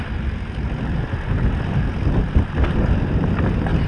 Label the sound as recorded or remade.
recorded